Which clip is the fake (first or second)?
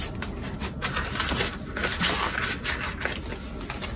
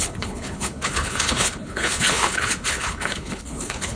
second